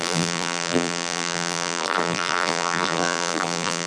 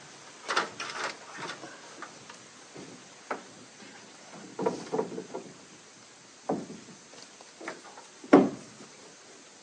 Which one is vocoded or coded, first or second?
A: first